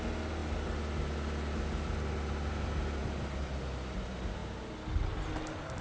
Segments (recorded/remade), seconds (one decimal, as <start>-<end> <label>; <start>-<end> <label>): 0.0-5.8 recorded